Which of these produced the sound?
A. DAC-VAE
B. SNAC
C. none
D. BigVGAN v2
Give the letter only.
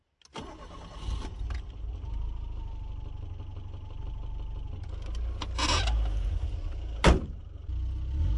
C